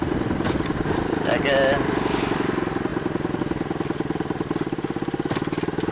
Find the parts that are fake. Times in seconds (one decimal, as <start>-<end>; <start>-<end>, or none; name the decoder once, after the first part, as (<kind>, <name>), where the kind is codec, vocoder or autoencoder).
none